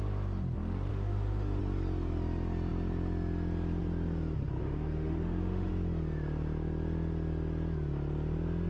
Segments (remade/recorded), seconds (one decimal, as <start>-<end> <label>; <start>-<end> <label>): 0.0-0.9 recorded; 0.9-1.6 remade; 1.6-4.6 recorded; 4.6-5.7 remade; 5.7-8.7 recorded